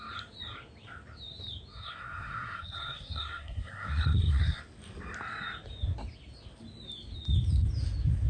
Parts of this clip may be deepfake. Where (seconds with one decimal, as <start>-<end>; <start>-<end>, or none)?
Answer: 1.7-4.6